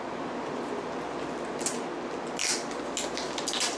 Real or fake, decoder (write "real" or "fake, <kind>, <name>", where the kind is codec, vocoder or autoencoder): real